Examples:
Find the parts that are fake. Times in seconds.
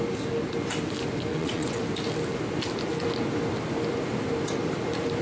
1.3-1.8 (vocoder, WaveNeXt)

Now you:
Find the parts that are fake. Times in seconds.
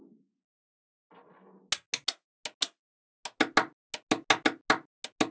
none